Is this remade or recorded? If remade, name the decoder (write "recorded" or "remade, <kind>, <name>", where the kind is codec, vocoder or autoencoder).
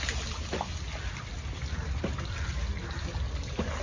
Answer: recorded